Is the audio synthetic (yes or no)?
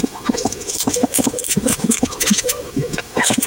yes